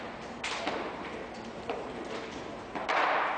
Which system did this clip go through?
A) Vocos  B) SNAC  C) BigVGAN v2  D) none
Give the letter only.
C